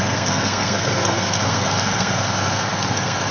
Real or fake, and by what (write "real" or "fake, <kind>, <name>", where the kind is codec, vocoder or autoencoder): fake, codec, SNAC